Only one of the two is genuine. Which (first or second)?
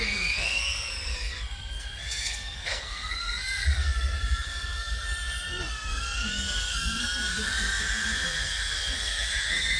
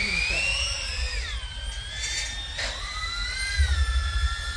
second